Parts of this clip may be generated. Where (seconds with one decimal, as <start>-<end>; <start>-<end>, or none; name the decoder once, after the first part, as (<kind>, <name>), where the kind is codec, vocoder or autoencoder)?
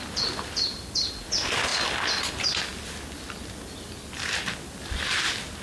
none